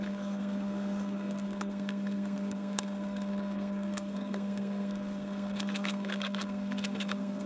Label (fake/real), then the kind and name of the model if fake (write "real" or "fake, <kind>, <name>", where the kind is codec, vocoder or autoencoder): fake, codec, SNAC